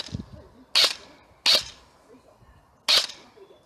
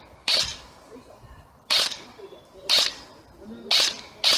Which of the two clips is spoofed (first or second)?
second